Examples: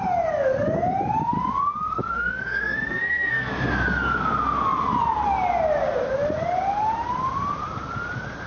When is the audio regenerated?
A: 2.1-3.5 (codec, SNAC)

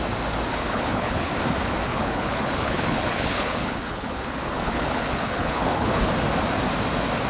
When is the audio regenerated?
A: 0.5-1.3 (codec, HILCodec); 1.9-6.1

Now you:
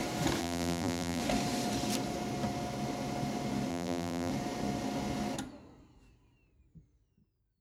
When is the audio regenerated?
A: 0.4-1.2 (vocoder, BigVGAN v2); 3.7-4.3

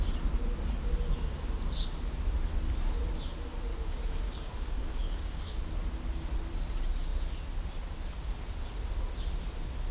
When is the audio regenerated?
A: 3.7-5.6 (codec, DAC)

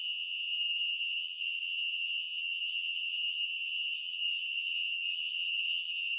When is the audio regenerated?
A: 0.0-6.2 (vocoder, HiFi-GAN)

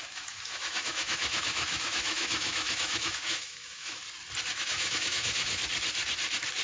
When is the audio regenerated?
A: 0.0-4.0 (autoencoder, DAC-VAE); 4.5-5.6